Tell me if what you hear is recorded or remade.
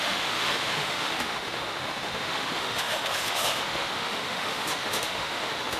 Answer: remade